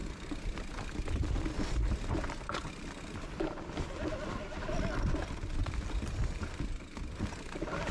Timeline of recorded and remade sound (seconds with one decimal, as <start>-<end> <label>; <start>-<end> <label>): 0.0-7.9 recorded